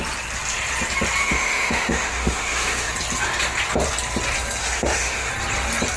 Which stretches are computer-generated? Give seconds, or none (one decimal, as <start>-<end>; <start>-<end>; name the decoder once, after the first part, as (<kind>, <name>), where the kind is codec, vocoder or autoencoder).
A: 1.2-2.9 (autoencoder, DAC-VAE); 4.6-5.3